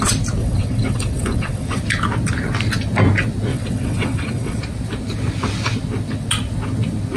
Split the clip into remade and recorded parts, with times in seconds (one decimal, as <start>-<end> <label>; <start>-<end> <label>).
0.0-0.4 recorded; 0.4-1.8 remade; 1.8-3.5 recorded; 3.5-4.6 remade; 4.6-7.2 recorded